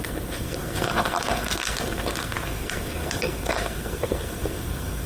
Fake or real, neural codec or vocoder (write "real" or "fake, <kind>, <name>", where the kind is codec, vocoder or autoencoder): fake, codec, SNAC